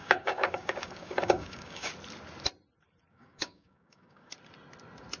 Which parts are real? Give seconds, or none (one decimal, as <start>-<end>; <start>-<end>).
1.9-3.1; 4.3-5.2